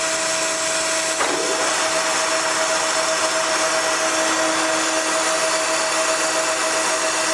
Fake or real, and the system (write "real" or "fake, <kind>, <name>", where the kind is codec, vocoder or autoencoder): real